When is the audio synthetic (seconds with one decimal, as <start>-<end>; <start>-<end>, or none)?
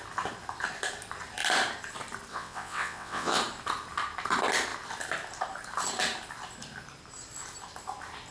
2.3-3.4